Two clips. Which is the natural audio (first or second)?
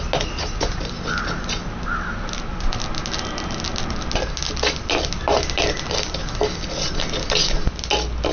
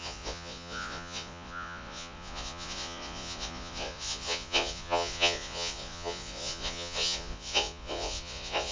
first